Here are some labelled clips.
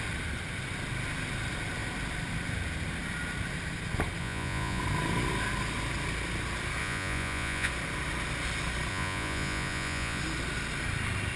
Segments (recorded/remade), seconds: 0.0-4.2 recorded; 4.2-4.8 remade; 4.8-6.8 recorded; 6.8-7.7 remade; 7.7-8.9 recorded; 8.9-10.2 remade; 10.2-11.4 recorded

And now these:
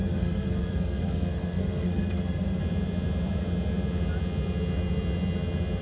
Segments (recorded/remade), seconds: 0.0-2.6 remade; 2.6-5.8 recorded

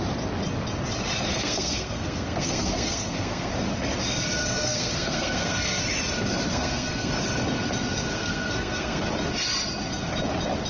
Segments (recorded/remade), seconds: 0.0-1.3 recorded; 1.3-3.5 remade; 3.5-4.4 recorded; 4.4-5.8 remade; 5.8-6.5 recorded; 6.5-7.1 remade; 7.1-8.1 recorded; 8.1-9.0 remade; 9.0-10.7 recorded

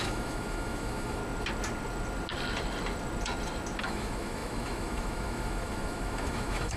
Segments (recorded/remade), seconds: 0.0-1.2 remade; 1.2-3.8 recorded; 3.8-6.8 remade

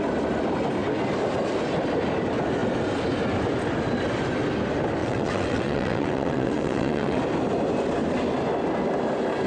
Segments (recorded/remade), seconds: 0.0-5.0 recorded; 5.0-7.2 remade; 7.2-9.5 recorded

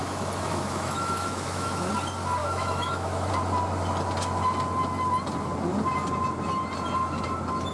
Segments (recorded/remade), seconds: 0.0-1.9 remade; 1.9-2.4 recorded; 2.4-3.3 remade; 3.3-7.7 recorded

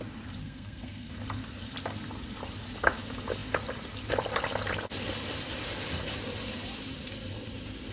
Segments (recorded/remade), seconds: 0.0-0.4 recorded; 0.4-1.1 remade; 1.1-7.9 recorded

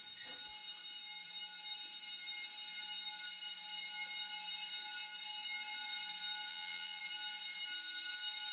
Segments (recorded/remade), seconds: 0.0-6.5 recorded; 6.5-7.0 remade; 7.0-8.5 recorded